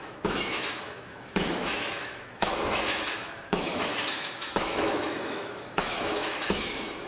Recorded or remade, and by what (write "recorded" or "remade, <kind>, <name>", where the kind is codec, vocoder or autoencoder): remade, autoencoder, DAC-VAE